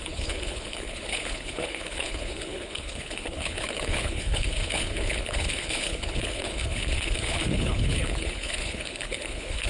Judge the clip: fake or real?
fake